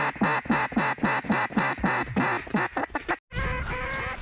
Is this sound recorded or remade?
recorded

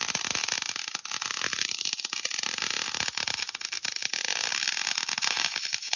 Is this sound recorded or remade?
recorded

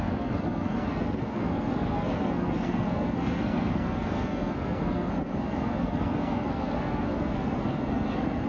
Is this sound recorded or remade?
remade